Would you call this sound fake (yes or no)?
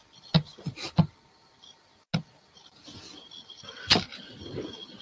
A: no